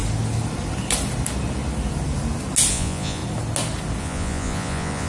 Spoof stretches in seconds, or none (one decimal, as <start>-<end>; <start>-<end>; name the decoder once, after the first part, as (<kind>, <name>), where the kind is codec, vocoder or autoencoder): 2.7-3.2 (vocoder, Vocos); 4.0-5.1